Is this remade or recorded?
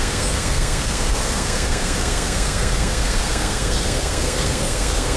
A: remade